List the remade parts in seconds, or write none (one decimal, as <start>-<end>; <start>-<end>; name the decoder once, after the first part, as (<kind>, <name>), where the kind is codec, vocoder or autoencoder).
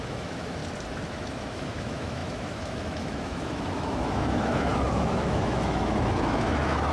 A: 0.0-0.6 (autoencoder, DAC-VAE); 1.1-6.9